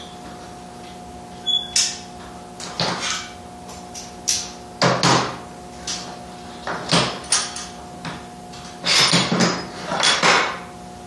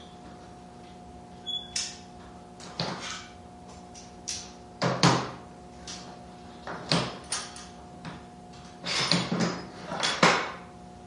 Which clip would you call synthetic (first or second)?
second